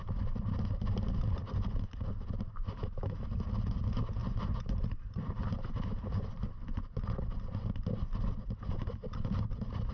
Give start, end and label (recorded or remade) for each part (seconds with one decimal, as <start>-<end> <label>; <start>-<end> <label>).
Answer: 0.0-4.2 recorded; 4.2-6.3 remade; 6.3-9.9 recorded